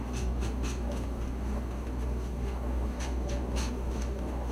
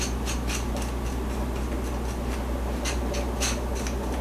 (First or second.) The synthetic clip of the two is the first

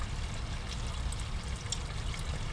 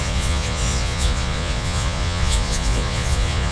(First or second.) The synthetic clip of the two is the second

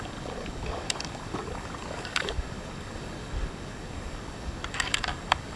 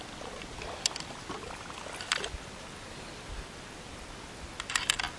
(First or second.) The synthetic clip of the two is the first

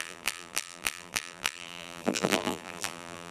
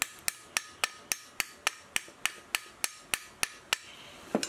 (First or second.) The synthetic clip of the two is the first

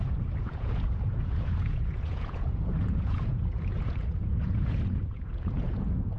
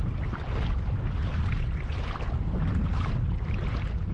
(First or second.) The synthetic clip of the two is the first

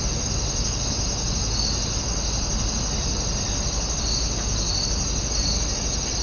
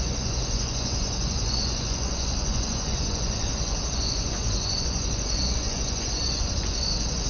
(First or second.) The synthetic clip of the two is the second